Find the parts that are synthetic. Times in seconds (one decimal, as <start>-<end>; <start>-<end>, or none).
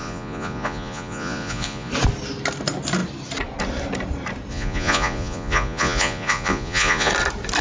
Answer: 0.0-1.9; 4.5-7.1